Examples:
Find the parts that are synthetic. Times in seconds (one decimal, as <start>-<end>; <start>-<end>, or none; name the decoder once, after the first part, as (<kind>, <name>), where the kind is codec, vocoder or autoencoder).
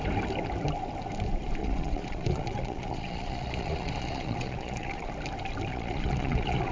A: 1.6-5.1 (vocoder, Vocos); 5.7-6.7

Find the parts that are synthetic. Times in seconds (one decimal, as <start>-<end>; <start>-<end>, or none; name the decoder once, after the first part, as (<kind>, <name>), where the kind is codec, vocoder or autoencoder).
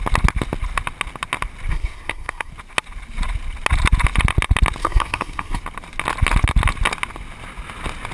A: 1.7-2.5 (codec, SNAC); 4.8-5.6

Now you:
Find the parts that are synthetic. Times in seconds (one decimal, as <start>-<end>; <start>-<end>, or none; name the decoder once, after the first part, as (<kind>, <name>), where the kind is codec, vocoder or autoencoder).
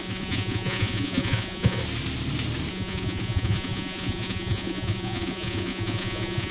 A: 0.0-1.8 (vocoder, Vocos); 2.7-6.5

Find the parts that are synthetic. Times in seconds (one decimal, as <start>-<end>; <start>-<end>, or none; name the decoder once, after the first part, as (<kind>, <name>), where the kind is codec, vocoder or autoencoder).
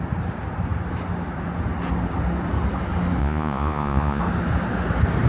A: 3.2-4.2 (vocoder, Vocos)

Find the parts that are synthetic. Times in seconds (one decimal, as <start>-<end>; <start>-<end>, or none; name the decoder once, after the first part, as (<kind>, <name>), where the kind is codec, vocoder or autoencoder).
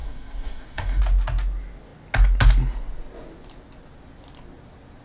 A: 0.0-1.0 (codec, DAC)